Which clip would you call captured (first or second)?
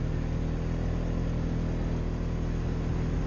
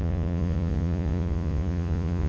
first